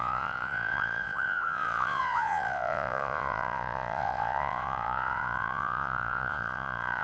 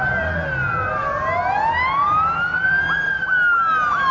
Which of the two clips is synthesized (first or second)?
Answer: first